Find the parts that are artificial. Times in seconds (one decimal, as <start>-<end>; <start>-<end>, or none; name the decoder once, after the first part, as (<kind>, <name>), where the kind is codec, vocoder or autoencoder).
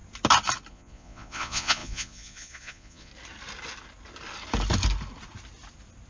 0.7-3.1 (vocoder, Vocos)